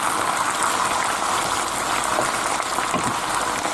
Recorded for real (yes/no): yes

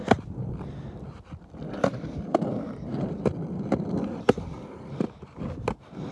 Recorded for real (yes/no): no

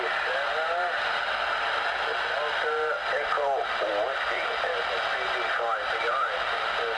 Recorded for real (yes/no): yes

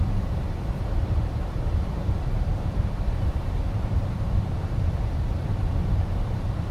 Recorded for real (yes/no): no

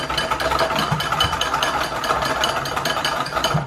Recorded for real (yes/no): yes